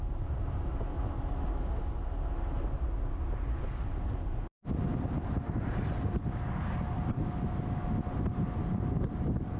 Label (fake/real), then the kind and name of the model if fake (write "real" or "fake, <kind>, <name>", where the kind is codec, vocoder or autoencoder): real